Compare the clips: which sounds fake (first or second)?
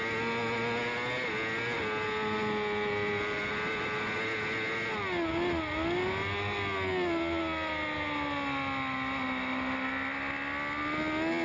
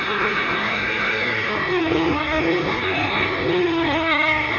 second